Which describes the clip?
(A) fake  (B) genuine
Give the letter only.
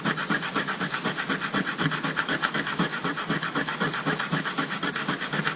B